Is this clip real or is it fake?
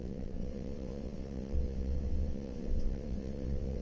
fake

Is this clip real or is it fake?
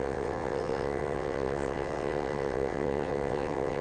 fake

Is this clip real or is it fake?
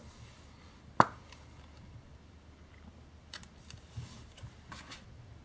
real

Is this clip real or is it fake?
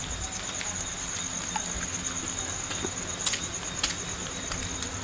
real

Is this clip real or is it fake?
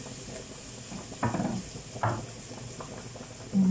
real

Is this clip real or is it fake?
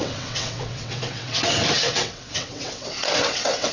fake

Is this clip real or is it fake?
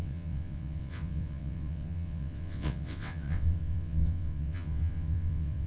fake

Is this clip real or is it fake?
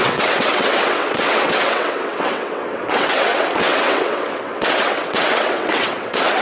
fake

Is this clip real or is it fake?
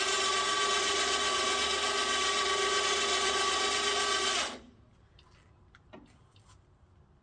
real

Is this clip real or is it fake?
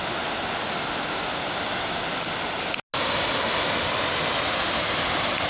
real